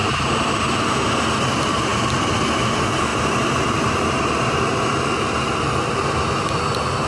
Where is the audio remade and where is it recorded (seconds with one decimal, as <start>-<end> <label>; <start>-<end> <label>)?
0.0-1.9 recorded; 1.9-2.7 remade; 2.7-3.1 recorded; 3.1-6.6 remade; 6.6-7.1 recorded